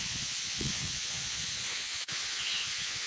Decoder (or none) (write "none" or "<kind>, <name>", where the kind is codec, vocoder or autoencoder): vocoder, Vocos